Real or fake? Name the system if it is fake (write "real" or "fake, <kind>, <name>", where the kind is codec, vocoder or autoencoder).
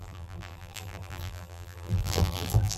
fake, vocoder, BigVGAN v2